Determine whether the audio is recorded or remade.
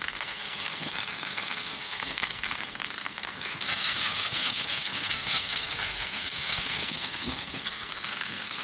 remade